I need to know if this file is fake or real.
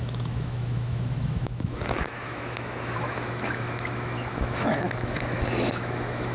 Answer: fake